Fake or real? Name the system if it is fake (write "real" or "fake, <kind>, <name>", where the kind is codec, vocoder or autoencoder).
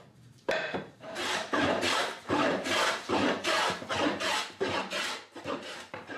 fake, vocoder, BigVGAN v2